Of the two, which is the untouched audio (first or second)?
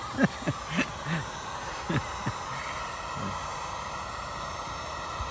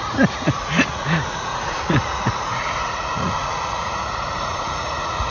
first